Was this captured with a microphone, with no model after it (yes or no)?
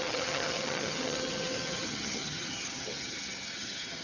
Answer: no